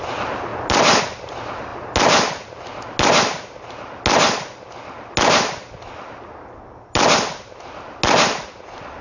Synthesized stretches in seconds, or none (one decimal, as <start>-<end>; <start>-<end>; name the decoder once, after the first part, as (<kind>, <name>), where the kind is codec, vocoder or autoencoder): none